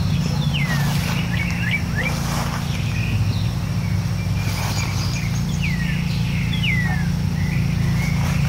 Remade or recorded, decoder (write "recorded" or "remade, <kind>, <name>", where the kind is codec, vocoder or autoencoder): recorded